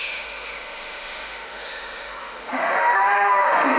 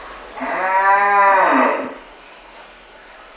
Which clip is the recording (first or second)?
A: second